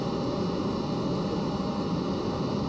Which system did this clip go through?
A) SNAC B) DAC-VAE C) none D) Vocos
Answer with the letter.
C